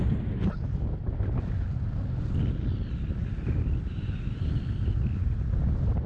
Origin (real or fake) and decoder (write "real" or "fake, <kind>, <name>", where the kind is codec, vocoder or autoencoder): real